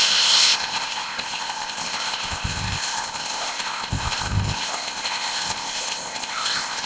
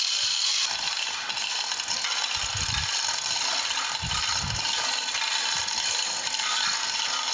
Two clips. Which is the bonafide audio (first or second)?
second